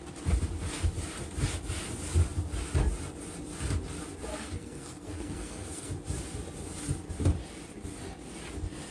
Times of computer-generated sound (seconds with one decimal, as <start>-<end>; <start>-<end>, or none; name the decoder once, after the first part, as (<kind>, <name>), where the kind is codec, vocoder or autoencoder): 4.3-5.9 (codec, SNAC)